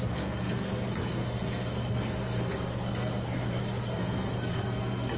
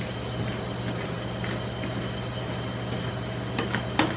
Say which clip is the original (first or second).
second